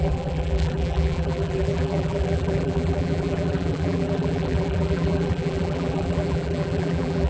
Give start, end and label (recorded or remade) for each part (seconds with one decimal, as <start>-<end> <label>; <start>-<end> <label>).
0.0-7.3 remade